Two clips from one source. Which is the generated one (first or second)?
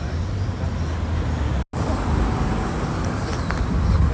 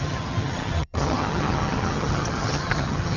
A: second